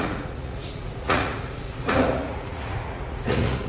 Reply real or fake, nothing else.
fake